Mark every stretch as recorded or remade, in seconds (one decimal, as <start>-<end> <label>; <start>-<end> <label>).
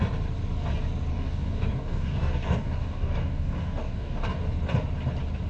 0.0-1.1 recorded; 1.1-4.4 remade; 4.4-5.5 recorded